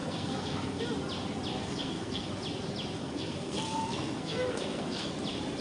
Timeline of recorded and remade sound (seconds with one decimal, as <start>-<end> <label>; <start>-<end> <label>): 0.0-0.8 remade; 0.8-1.5 recorded; 1.5-2.3 remade; 2.3-3.0 recorded; 3.0-5.1 remade; 5.1-5.6 recorded